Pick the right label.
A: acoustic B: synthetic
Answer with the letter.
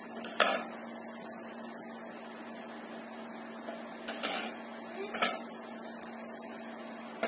A